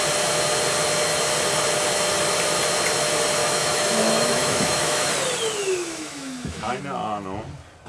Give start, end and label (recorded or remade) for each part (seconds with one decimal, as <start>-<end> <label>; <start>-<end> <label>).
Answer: 0.0-3.4 recorded; 3.4-5.1 remade; 5.1-5.6 recorded; 5.6-6.8 remade; 6.8-7.9 recorded